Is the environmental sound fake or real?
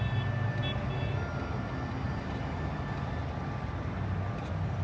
real